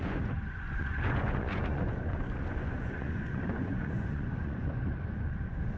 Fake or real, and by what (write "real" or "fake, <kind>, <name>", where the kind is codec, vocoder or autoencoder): fake, vocoder, Vocos